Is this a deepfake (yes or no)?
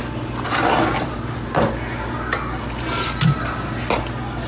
no